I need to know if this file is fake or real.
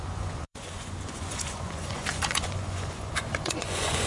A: fake